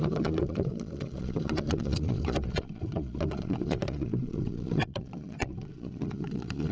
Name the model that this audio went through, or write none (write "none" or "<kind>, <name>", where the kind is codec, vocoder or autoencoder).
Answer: vocoder, Vocos